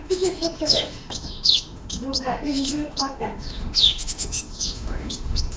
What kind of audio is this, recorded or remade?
remade